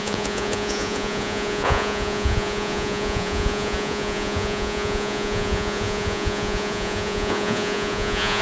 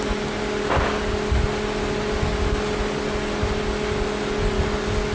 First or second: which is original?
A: second